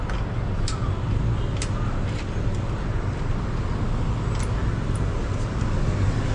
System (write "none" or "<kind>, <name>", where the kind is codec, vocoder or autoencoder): none